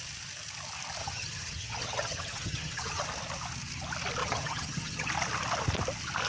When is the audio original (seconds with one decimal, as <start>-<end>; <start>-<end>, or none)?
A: 0.0-1.0; 3.0-4.2; 5.1-6.3